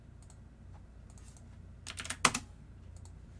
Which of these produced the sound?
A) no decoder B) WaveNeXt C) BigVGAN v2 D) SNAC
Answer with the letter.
A